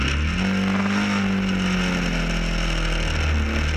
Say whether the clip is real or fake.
real